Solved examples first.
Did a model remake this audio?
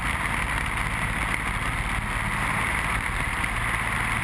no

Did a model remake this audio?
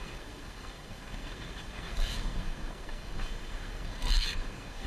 yes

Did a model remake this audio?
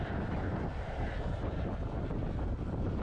no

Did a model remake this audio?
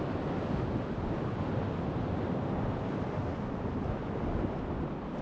no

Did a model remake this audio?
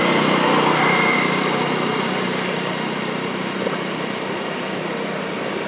yes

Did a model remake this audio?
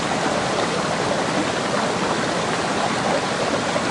no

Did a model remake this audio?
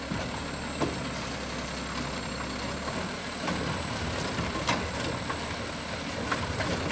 no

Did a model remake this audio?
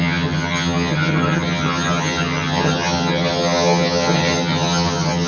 yes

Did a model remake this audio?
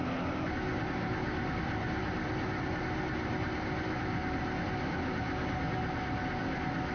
no